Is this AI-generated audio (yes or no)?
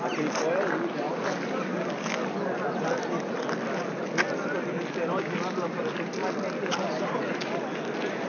no